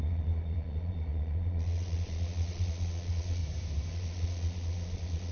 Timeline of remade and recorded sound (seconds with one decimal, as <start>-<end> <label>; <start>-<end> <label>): 0.0-3.4 remade; 3.4-3.9 recorded; 3.9-5.3 remade